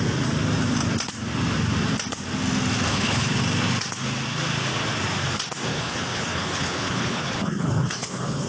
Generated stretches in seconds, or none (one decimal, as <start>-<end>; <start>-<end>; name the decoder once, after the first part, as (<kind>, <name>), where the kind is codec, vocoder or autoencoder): 2.9-3.4 (codec, HILCodec); 5.7-8.5